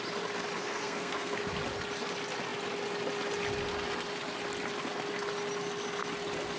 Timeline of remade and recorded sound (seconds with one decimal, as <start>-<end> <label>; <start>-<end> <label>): 0.0-0.6 recorded; 0.6-1.4 remade; 1.4-6.6 recorded